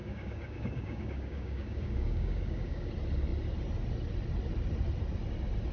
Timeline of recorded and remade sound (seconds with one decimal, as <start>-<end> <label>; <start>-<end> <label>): 0.0-2.9 remade; 2.9-5.7 recorded